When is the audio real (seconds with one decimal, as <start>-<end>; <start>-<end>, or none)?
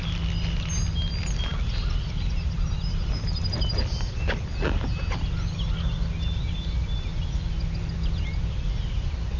0.0-9.4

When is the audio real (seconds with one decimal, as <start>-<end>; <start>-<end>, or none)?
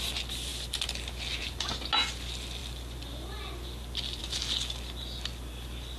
0.0-6.0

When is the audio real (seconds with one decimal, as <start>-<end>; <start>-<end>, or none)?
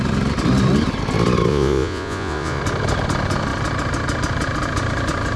0.0-1.5; 2.6-5.4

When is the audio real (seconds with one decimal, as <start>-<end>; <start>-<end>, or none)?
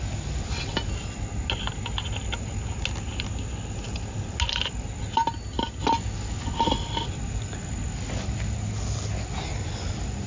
0.0-10.3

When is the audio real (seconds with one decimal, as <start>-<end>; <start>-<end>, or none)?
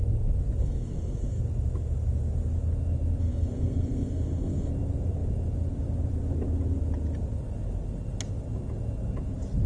0.0-0.6; 1.4-3.2; 4.7-9.7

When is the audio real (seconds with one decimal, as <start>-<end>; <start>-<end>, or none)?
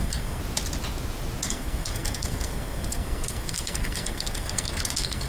0.4-1.4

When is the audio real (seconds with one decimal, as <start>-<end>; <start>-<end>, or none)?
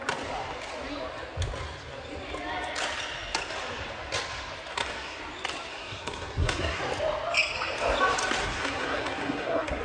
0.0-4.7; 5.2-5.7; 6.8-8.4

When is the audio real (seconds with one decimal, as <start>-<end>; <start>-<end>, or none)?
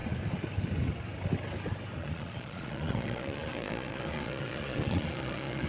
0.0-2.0